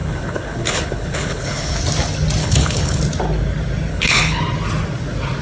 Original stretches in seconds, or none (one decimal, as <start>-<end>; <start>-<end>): 1.8-2.4; 3.0-3.9; 4.4-5.4